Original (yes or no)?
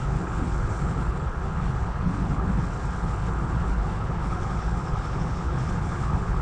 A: no